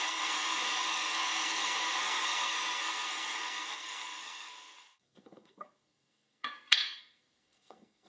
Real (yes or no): no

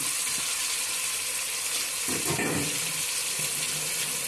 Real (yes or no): yes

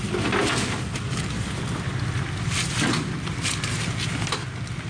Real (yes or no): yes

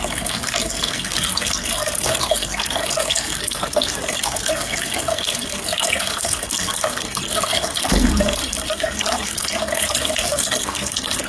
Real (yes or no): no